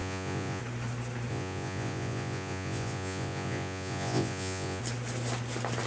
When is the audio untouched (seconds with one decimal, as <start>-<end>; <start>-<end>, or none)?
0.6-1.3; 4.8-5.9